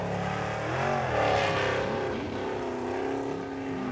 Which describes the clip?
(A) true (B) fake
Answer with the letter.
A